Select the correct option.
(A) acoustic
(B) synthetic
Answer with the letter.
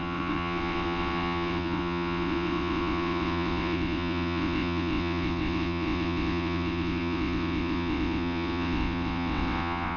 B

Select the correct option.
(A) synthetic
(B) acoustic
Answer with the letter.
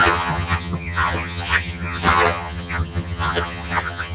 A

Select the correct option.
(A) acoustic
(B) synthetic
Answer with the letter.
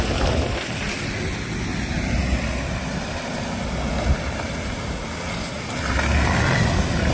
A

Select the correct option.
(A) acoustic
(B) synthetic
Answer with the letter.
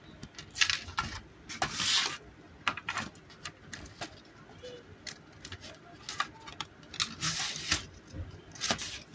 A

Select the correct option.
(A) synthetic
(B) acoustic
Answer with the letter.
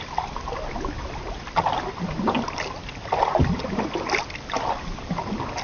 B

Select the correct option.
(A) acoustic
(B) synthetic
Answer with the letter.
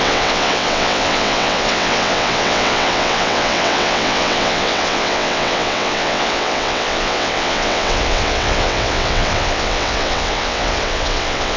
B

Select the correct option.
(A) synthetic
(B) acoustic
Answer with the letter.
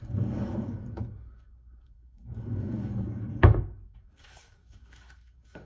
A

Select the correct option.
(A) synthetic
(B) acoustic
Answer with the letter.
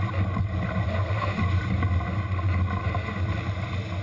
B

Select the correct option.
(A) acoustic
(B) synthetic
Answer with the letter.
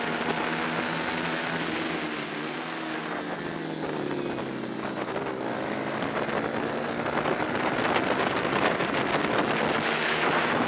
A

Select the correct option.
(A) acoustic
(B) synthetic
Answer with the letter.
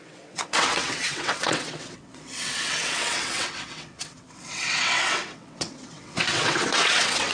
B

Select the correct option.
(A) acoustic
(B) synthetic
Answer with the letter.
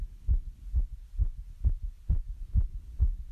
A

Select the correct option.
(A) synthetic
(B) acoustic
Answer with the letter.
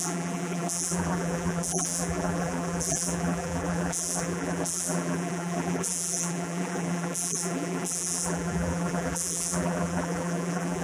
A